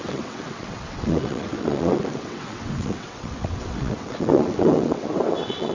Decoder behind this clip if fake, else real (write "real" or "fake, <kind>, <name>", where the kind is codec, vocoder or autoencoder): fake, vocoder, WaveNeXt